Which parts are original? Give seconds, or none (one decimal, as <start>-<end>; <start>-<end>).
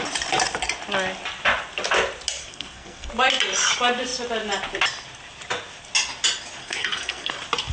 0.0-2.4; 3.1-6.6; 7.3-7.7